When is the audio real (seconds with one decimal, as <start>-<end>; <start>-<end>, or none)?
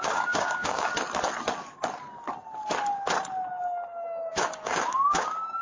0.9-4.3